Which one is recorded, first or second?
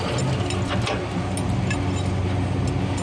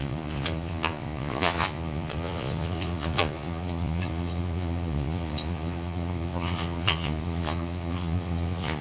first